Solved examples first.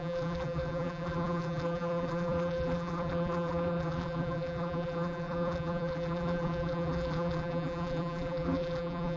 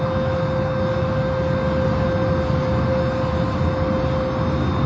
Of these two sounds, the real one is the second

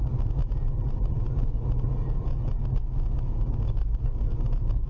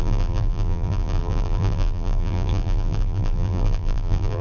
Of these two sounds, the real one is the first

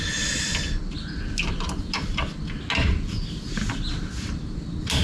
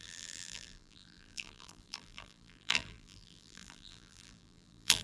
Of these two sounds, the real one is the first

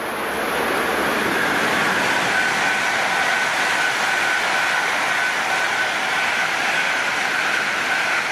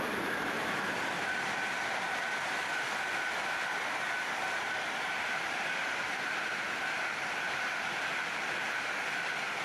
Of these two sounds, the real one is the first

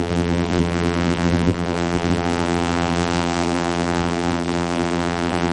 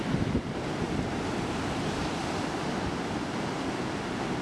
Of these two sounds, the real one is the second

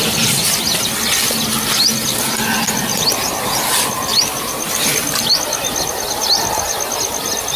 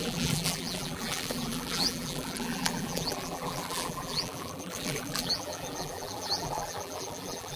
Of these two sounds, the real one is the first